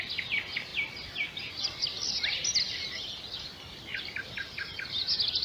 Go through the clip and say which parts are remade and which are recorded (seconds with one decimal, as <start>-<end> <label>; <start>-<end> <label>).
0.0-5.4 recorded